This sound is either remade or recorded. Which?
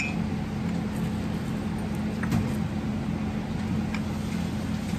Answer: recorded